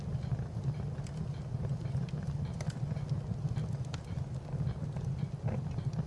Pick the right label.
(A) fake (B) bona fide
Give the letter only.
B